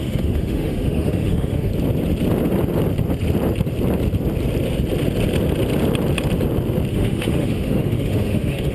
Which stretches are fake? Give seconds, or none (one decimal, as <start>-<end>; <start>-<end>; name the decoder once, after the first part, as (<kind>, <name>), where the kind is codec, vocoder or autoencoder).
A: 0.0-1.7 (autoencoder, DAC-VAE); 6.9-8.7